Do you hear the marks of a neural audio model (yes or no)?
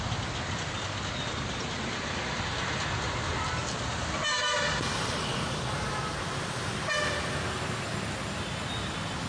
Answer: no